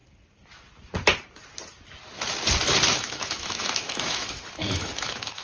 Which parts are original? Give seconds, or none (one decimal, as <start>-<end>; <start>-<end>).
0.0-2.9

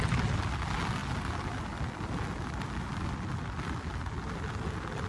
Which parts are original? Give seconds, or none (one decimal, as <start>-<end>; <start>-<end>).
0.0-5.1

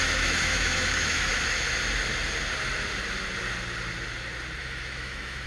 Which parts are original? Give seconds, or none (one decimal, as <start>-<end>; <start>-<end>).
1.3-4.6

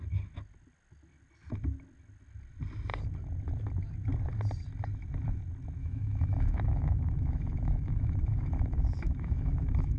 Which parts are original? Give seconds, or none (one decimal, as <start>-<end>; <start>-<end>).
0.0-5.8

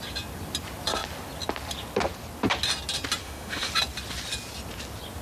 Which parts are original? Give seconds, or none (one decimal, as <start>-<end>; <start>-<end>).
0.0-3.2; 3.7-5.2

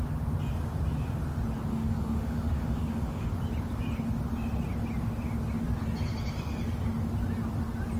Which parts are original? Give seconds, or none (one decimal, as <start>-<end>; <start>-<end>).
0.0-1.7; 3.3-8.0

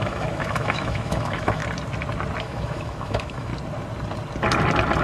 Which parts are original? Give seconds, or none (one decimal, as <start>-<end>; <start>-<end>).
1.6-2.4; 3.5-5.0